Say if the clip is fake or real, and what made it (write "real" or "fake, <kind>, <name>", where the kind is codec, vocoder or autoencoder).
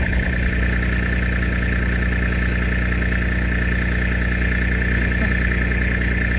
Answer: real